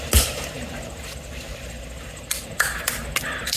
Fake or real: real